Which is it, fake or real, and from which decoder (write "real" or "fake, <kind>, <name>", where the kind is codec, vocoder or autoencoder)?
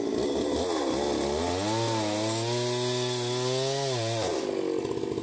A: real